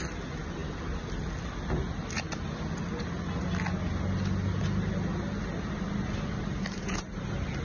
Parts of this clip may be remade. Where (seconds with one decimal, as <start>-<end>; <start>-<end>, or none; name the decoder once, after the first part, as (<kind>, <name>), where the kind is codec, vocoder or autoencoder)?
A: 5.4-7.6 (vocoder, BigVGAN v2)

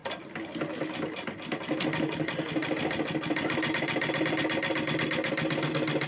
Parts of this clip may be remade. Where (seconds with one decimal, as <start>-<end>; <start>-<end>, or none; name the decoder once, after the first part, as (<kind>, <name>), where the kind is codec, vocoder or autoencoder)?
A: none

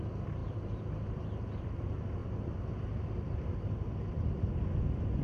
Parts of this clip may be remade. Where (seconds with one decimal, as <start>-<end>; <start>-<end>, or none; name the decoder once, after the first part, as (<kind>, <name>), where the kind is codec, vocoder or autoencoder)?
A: 0.4-1.8 (vocoder, BigVGAN v2); 2.2-5.2